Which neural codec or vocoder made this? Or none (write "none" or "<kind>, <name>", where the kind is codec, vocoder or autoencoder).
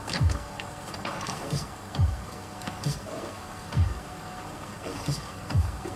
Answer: codec, SNAC